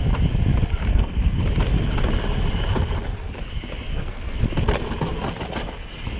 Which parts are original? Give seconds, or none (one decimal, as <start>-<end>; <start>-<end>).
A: 0.0-0.9; 1.4-3.9; 4.4-6.2

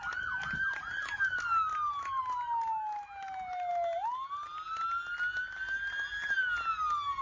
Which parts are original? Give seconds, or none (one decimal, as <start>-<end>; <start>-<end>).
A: 0.0-7.2

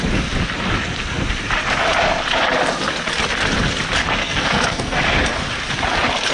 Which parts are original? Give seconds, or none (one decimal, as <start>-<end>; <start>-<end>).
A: 0.0-4.2; 5.0-6.3

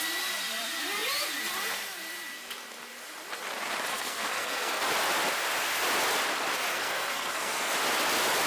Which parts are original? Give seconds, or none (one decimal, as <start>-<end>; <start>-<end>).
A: 0.0-3.9; 4.8-6.7; 7.7-8.5